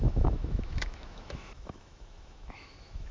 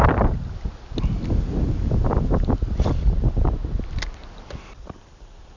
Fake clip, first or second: first